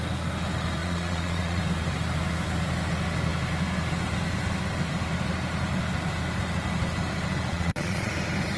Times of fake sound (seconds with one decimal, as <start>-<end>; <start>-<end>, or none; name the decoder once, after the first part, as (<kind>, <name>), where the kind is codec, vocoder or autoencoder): 0.8-1.6 (vocoder, Vocos); 7.5-8.1